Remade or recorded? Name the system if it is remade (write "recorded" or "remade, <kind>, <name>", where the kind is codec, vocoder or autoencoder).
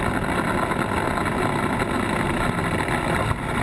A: recorded